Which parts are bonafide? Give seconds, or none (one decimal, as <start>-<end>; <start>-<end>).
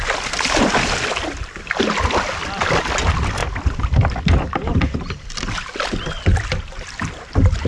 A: 0.0-7.7